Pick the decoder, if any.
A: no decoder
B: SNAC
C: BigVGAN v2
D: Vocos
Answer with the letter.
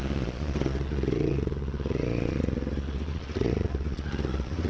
D